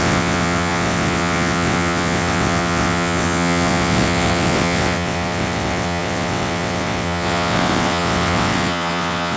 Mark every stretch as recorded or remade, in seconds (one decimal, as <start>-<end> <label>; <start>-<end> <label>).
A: 0.0-9.4 remade